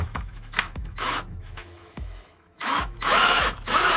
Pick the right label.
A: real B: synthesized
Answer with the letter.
B